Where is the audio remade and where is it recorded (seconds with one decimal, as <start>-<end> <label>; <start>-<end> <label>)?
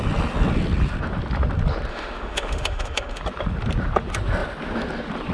0.0-1.9 recorded; 1.9-3.2 remade; 3.2-5.3 recorded